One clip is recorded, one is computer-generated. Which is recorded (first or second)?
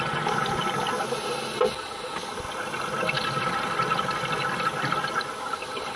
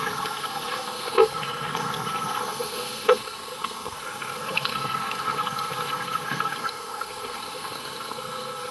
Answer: first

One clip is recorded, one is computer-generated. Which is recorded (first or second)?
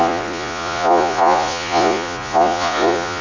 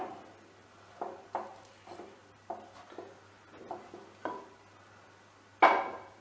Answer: second